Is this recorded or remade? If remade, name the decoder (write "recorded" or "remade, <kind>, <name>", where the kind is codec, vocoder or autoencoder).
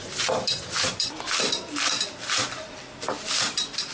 remade, vocoder, BigVGAN v2